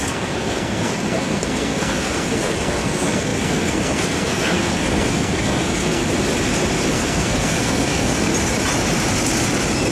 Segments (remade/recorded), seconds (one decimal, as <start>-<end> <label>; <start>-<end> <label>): 0.0-6.0 remade; 6.0-6.9 recorded; 6.9-8.3 remade; 8.3-9.9 recorded

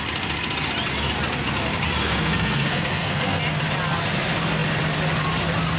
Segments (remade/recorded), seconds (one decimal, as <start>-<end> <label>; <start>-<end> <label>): 0.0-2.0 recorded; 2.0-3.4 remade; 3.4-5.8 recorded